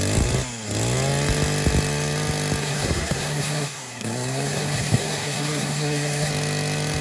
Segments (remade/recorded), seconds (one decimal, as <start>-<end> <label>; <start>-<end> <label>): 0.0-2.6 recorded; 2.6-6.3 remade; 6.3-7.0 recorded